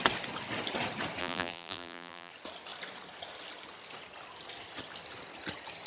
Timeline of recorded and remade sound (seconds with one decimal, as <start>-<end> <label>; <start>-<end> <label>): 0.0-1.2 recorded; 1.2-2.3 remade; 2.3-5.9 recorded

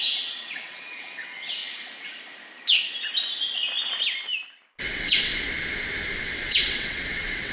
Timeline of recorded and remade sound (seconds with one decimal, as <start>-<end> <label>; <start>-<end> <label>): 0.0-1.6 remade; 1.6-4.8 recorded; 4.8-5.3 remade; 5.3-6.2 recorded; 6.2-7.5 remade

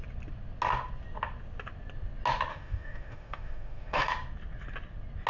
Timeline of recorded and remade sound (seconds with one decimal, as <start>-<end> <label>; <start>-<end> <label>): 0.0-2.5 recorded; 2.5-4.1 remade; 4.1-5.3 recorded

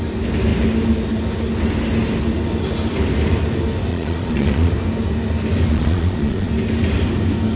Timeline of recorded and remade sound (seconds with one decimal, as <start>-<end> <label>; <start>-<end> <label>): 0.0-3.9 recorded; 3.9-4.7 remade; 4.7-5.7 recorded; 5.7-6.5 remade; 6.5-7.6 recorded

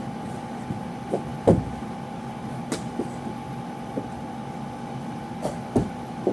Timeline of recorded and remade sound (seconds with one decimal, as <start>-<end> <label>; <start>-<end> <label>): 0.0-6.3 recorded

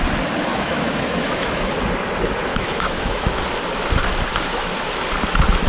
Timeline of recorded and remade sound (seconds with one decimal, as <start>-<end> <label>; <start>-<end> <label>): 0.0-0.5 recorded; 0.5-1.7 remade; 1.7-2.5 recorded; 2.5-3.4 remade; 3.4-4.3 recorded; 4.3-4.9 remade; 4.9-5.7 recorded

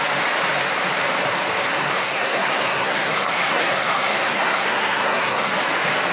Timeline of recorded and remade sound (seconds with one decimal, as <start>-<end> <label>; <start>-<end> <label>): 0.0-1.8 recorded; 1.8-5.5 remade; 5.5-6.1 recorded

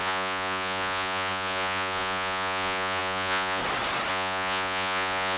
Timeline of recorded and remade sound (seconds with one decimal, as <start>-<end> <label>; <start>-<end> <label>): 0.0-3.6 remade; 3.6-4.1 recorded; 4.1-5.4 remade